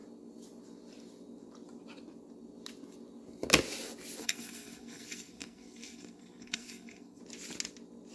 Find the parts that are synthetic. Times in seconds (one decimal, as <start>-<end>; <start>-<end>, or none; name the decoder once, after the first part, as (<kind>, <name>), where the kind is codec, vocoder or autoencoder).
4.2-7.2 (codec, SNAC)